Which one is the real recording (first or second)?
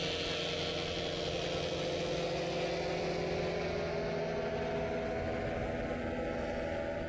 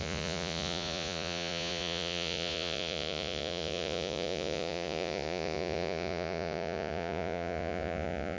first